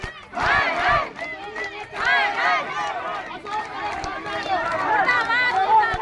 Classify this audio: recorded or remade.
recorded